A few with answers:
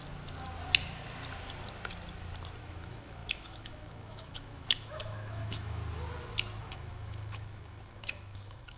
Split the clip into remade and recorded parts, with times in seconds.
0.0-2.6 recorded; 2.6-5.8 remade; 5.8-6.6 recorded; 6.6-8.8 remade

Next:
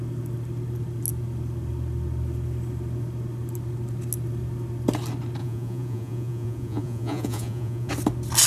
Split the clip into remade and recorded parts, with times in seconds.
0.0-5.4 recorded; 5.4-7.9 remade; 7.9-8.5 recorded

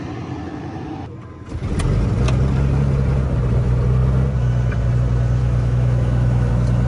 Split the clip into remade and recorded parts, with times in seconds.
0.0-5.4 recorded; 5.4-6.5 remade; 6.5-6.9 recorded

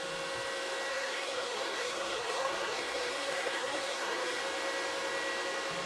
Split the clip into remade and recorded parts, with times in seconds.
0.0-0.9 recorded; 0.9-4.4 remade; 4.4-5.9 recorded

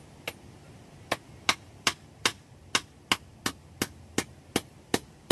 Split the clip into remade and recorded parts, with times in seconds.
0.0-5.3 recorded

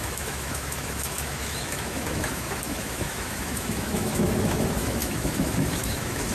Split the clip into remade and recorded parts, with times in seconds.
0.0-6.3 remade

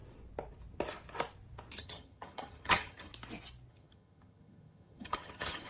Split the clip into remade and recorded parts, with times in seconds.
0.0-1.8 recorded; 1.8-3.1 remade; 3.1-3.7 recorded; 3.7-5.7 remade